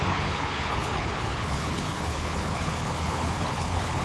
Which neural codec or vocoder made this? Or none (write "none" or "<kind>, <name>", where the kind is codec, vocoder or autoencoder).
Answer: codec, HILCodec